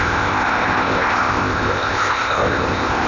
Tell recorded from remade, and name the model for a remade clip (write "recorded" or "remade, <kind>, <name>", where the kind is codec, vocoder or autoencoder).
remade, codec, ZipCodec